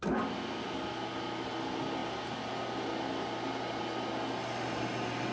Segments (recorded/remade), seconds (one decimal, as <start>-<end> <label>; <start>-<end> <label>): 0.0-5.3 recorded